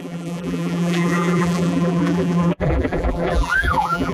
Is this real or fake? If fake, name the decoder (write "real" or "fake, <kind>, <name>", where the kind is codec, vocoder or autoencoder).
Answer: fake, vocoder, BigVGAN v2